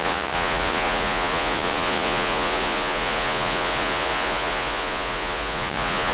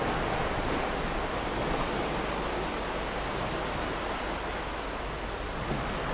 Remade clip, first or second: first